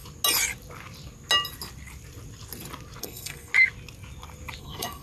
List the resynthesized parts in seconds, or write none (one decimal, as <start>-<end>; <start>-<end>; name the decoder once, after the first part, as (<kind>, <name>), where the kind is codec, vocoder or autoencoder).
3.0-3.5 (codec, SNAC); 4.6-5.0